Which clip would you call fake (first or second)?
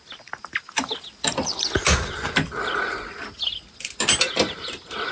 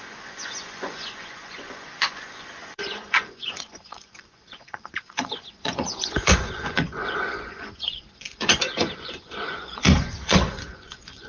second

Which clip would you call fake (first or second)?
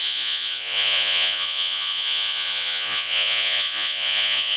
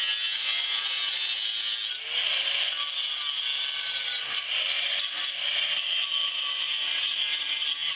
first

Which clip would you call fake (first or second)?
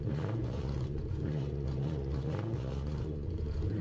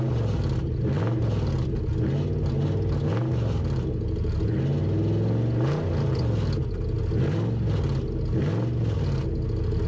first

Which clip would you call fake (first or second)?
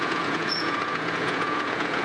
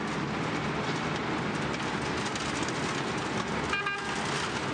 first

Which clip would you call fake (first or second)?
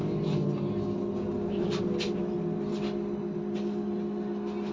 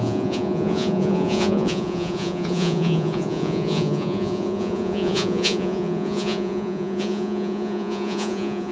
second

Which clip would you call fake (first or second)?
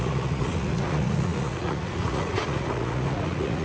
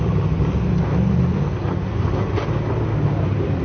first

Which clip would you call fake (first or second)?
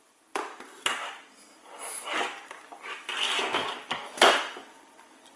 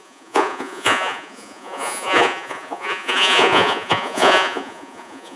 second